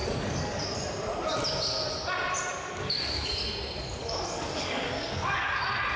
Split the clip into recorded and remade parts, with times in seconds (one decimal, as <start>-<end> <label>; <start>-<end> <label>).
0.0-0.6 remade; 0.6-2.5 recorded; 2.5-3.4 remade; 3.4-4.0 recorded; 4.0-5.6 remade; 5.6-6.0 recorded